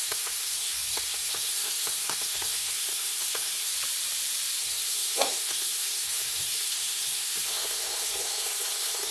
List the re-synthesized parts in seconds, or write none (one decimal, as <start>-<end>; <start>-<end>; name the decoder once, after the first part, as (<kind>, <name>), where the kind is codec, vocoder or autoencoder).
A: 0.0-3.7 (codec, SNAC); 4.6-9.1